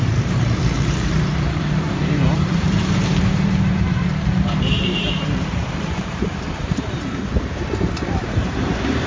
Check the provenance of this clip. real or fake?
fake